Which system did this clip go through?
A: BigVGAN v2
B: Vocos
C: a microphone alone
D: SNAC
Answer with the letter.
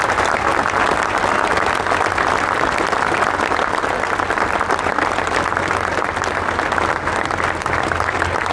C